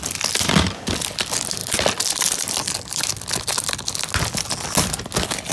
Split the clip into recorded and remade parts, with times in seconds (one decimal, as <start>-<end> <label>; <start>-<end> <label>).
0.0-1.6 recorded; 1.6-2.6 remade; 2.6-5.5 recorded